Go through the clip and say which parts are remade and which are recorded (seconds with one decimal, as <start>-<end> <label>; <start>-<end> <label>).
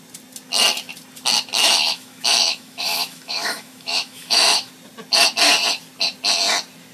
0.0-1.6 recorded; 1.6-4.7 remade; 4.7-6.9 recorded